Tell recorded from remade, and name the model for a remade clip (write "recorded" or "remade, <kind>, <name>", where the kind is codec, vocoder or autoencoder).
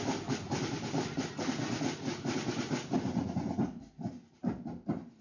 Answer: recorded